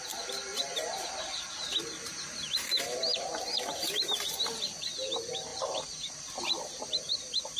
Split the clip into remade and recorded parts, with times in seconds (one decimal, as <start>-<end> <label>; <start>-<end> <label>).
0.0-0.5 recorded; 0.5-1.4 remade; 1.4-5.5 recorded; 5.5-6.1 remade; 6.1-7.6 recorded